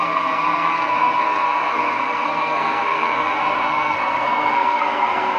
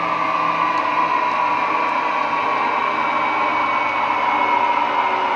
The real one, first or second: second